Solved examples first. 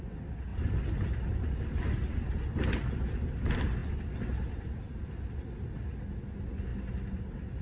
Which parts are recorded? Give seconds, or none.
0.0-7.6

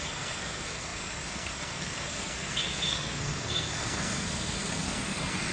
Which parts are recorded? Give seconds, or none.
none